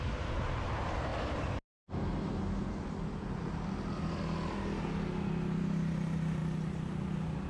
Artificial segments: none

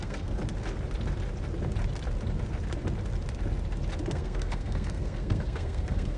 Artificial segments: 0.0-0.4; 4.1-6.2

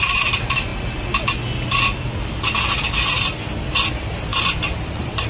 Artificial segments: 0.0-0.7; 3.9-5.3

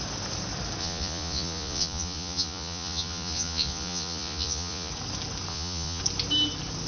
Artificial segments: 0.8-4.9; 5.5-6.0

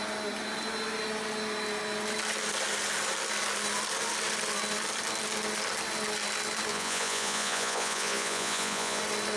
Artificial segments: 6.7-9.0

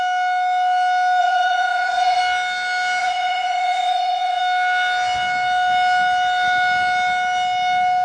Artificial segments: 1.2-2.2; 3.0-4.4

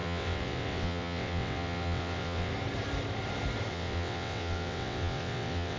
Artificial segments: 0.0-2.5; 3.7-5.8

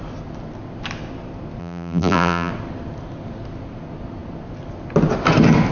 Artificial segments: 1.6-2.5